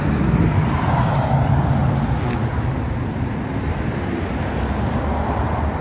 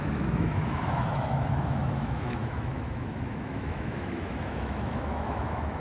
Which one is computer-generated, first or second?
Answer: second